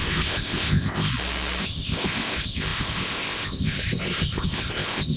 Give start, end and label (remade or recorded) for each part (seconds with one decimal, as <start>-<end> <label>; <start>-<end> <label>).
0.0-1.1 remade; 1.1-1.6 recorded; 1.6-5.2 remade